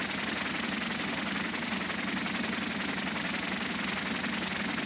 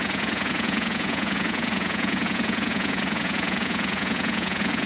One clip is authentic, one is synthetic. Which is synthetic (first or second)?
second